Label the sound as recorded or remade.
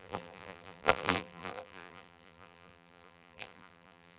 remade